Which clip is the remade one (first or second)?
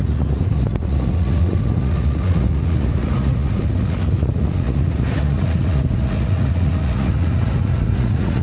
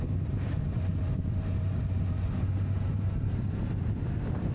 first